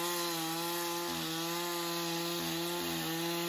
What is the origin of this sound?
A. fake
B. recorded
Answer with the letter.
B